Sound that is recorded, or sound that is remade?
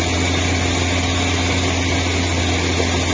recorded